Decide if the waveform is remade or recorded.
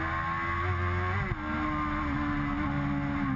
recorded